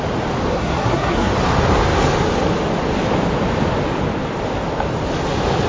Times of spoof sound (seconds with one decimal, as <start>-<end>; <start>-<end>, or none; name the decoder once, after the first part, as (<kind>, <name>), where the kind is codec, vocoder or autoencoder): 0.5-1.3 (codec, SNAC)